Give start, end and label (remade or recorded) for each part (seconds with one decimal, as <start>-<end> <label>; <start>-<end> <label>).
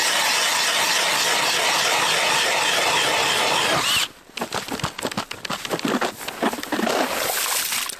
0.0-8.0 recorded